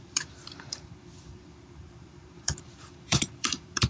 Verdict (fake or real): fake